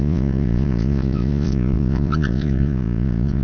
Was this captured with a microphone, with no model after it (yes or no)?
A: no